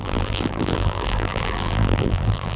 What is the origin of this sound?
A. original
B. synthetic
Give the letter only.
B